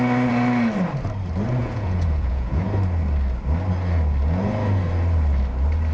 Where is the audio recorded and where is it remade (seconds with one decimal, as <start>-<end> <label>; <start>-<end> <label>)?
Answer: 0.0-1.6 recorded; 1.6-2.6 remade; 2.6-5.9 recorded